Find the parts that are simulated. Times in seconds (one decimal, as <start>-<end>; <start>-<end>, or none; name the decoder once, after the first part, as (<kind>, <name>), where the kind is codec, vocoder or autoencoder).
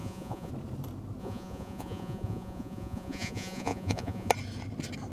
0.0-0.5 (vocoder, Vocos); 1.2-4.3